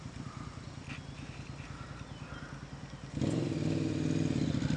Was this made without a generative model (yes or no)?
yes